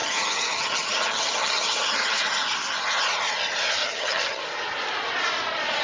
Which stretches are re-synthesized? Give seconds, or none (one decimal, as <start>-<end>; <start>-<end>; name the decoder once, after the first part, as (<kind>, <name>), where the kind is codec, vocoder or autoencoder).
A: 0.0-2.2 (vocoder, HiFi-GAN); 3.8-4.4